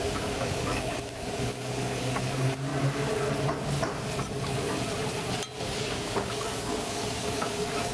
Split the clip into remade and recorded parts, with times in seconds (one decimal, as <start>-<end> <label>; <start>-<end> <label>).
0.0-2.7 remade; 2.7-5.6 recorded; 5.6-7.9 remade